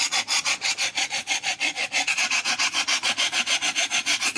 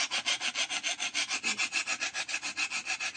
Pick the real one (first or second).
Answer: second